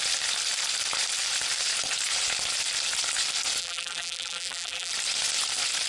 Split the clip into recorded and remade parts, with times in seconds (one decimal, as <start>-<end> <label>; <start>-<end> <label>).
0.0-3.6 recorded; 3.6-4.9 remade; 4.9-5.9 recorded